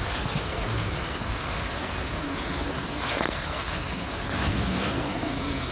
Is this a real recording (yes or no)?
no